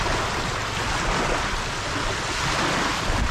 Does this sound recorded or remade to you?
recorded